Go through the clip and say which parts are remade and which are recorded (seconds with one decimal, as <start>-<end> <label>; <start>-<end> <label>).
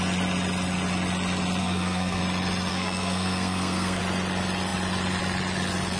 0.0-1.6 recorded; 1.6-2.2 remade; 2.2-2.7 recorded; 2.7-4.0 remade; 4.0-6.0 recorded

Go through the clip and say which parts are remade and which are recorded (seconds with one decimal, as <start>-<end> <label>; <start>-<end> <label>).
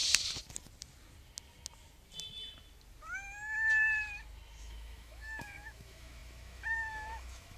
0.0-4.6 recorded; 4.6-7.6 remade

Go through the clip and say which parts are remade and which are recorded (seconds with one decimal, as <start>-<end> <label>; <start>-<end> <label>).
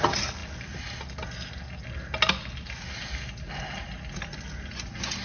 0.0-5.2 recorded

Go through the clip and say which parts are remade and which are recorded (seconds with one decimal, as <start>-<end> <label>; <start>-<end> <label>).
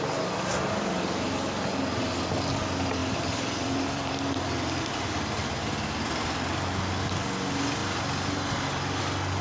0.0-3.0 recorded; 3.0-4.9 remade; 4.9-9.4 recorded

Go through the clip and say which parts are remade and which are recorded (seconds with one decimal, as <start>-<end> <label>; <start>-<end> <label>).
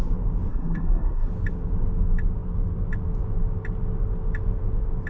0.0-0.5 recorded; 0.5-1.3 remade; 1.3-5.1 recorded